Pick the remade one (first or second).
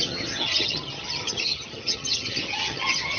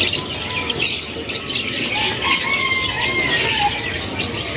first